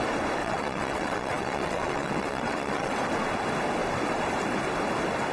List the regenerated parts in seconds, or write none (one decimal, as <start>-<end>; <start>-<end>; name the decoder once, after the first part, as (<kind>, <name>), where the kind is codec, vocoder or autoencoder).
0.4-3.0 (vocoder, WaveNeXt)